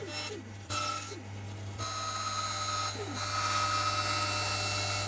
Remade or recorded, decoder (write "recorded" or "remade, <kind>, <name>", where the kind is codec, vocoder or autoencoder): recorded